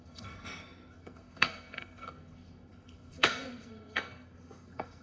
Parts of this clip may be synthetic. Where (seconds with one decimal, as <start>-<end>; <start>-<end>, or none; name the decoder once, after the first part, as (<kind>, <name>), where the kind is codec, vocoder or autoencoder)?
0.0-5.0 (codec, SNAC)